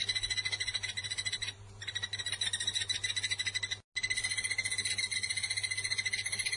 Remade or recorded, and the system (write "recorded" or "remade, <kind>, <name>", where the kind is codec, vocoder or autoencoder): recorded